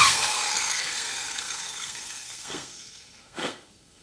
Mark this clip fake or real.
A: fake